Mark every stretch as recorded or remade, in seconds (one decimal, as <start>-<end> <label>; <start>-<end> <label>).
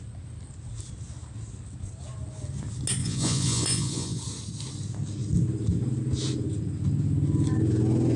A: 0.0-3.0 recorded; 3.0-4.2 remade; 4.2-8.2 recorded